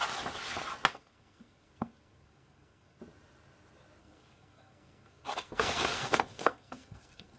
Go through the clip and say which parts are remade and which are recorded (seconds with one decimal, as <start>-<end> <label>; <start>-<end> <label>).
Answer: 0.0-0.9 recorded; 0.9-3.0 remade; 3.0-4.0 recorded; 4.0-7.4 remade